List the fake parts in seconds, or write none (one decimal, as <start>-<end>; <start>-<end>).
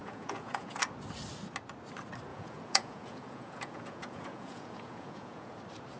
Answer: 0.0-0.8; 2.3-5.6